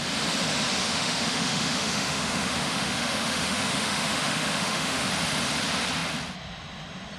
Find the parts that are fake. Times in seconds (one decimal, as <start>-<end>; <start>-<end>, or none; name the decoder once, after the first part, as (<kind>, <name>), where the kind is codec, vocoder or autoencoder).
0.8-5.1 (autoencoder, DAC-VAE)